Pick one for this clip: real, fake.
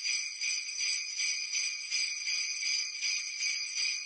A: fake